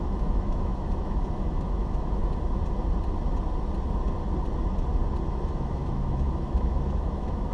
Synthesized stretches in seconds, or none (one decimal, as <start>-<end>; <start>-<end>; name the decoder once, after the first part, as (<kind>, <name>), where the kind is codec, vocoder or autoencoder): 0.0-2.2 (autoencoder, DAC-VAE); 5.3-7.5